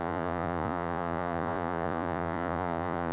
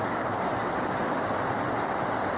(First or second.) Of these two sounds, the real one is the second